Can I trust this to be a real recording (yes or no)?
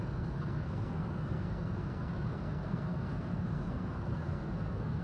no